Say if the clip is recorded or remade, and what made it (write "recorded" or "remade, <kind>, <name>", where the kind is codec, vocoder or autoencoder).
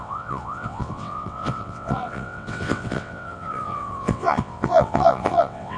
remade, vocoder, WaveNeXt